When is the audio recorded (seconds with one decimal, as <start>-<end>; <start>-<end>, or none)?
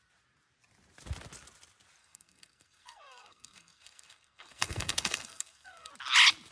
0.0-2.0; 5.9-6.5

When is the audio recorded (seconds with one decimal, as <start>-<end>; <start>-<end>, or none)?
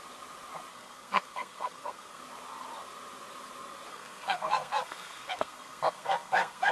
0.0-0.7; 2.2-3.9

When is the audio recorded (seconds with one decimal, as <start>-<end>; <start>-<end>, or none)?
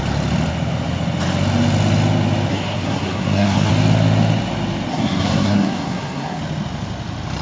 0.0-2.5; 3.7-4.9; 6.4-7.4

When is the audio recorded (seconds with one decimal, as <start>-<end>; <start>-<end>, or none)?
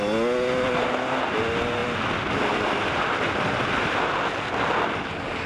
0.0-5.5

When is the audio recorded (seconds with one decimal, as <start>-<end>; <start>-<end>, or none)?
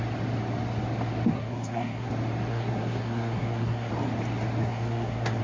0.0-1.3; 2.1-2.5; 3.9-4.6